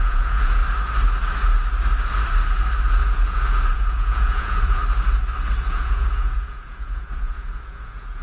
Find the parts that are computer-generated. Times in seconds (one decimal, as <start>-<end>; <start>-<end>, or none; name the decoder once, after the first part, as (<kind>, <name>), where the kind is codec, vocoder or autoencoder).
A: 0.0-0.6 (vocoder, Vocos); 3.0-4.8; 5.6-8.2